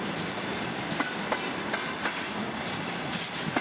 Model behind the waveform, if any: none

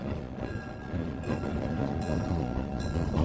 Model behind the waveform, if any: vocoder, Vocos